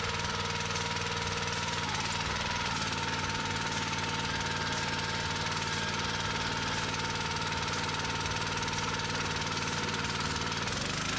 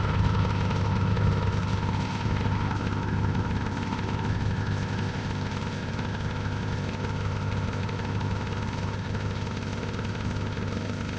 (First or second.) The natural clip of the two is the first